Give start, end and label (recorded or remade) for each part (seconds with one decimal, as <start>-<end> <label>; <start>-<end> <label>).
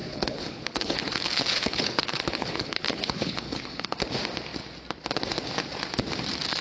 0.0-4.0 remade; 4.0-6.6 recorded